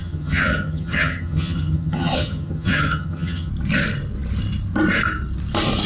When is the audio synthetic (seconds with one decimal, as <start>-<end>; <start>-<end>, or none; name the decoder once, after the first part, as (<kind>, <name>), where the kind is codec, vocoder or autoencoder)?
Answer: 0.0-3.5 (vocoder, HiFi-GAN)